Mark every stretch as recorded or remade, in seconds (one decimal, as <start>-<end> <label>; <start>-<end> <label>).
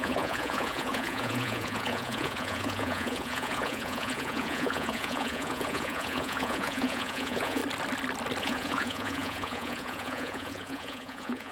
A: 0.0-7.6 remade; 7.6-8.4 recorded; 8.4-11.5 remade